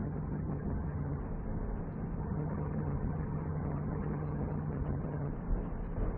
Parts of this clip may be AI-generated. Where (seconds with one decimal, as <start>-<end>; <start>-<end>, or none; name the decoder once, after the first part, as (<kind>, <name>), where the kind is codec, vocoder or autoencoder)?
0.0-1.2 (vocoder, HiFi-GAN); 2.2-5.3